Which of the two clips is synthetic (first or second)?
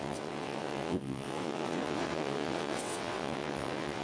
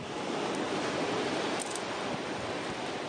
first